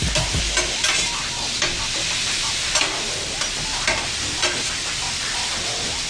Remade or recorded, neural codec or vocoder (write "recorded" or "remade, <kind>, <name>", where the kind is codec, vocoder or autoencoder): recorded